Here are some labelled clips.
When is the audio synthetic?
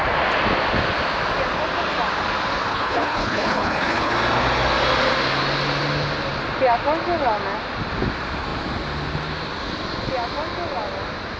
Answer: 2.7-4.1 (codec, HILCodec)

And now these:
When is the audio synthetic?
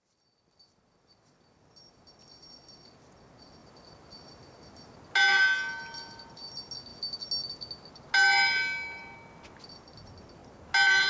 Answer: none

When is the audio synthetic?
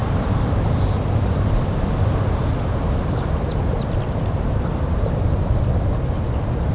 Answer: none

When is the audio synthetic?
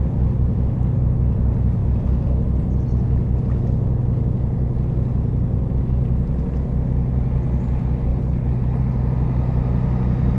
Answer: 8.1-8.8 (codec, HILCodec)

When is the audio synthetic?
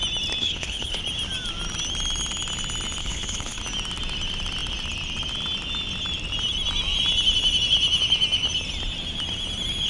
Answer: 0.4-1.0 (codec, HILCodec); 3.0-3.6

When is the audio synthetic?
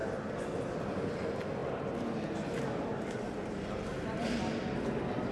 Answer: none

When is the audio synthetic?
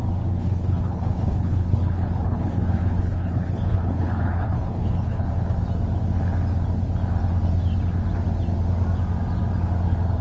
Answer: 0.4-5.3 (codec, HILCodec)